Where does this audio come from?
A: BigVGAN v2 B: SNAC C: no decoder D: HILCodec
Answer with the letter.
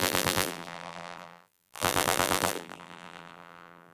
A